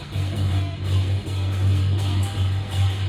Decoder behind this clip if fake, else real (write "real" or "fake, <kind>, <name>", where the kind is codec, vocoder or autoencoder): fake, codec, SNAC